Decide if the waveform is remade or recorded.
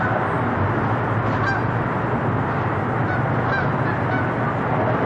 recorded